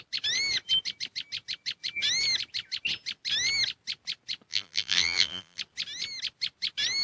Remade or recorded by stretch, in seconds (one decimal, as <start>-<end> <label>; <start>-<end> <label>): 0.0-4.5 recorded; 4.5-5.6 remade; 5.6-7.0 recorded